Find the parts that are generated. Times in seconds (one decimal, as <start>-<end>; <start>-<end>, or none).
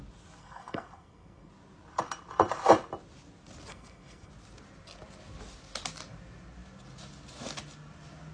0.4-1.5; 3.7-4.3